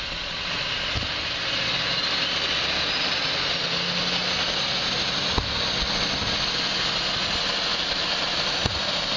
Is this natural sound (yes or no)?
yes